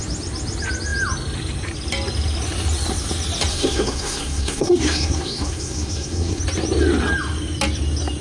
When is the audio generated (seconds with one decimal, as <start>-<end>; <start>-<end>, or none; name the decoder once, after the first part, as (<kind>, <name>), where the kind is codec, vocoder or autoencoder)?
3.5-6.4 (codec, SNAC)